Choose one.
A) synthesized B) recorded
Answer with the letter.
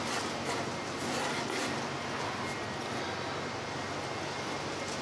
B